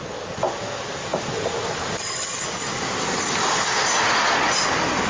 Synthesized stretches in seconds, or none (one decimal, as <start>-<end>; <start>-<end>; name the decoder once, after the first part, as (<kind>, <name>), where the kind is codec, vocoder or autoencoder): none